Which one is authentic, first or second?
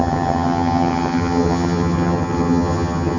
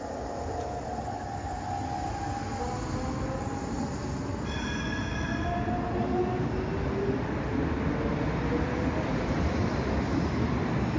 second